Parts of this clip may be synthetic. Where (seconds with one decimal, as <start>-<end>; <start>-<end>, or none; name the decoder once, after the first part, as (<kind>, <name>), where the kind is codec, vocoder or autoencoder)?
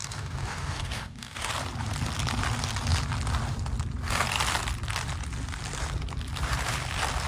0.0-1.5 (codec, DAC)